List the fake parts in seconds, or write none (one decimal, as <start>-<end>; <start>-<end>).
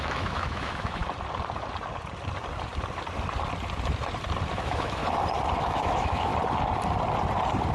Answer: 0.0-1.0; 4.5-5.0; 5.6-6.3